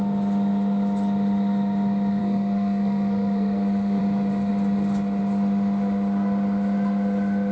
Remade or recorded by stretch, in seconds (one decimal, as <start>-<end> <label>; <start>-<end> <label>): 0.0-2.2 recorded; 2.2-4.0 remade; 4.0-7.5 recorded

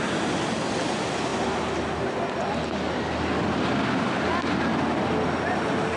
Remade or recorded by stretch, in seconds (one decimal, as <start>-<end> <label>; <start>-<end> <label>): 0.0-6.0 recorded

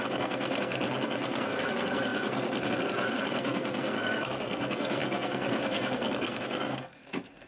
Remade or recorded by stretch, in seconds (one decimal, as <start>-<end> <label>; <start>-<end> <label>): 0.0-7.5 remade

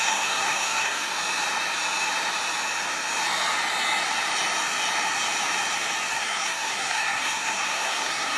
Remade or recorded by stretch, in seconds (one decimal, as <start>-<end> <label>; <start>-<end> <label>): 0.0-1.1 remade; 1.1-6.1 recorded; 6.1-8.4 remade

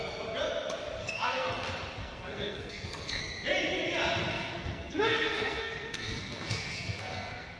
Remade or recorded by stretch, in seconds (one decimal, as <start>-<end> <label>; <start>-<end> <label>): 0.0-1.0 recorded; 1.0-1.5 remade; 1.5-2.0 recorded; 2.0-3.2 remade; 3.2-4.3 recorded; 4.3-7.6 remade

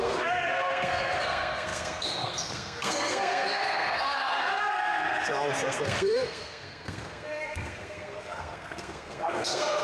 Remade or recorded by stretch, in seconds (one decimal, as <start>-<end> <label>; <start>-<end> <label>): 0.0-9.8 remade